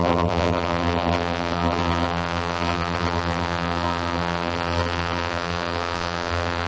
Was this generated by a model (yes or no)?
yes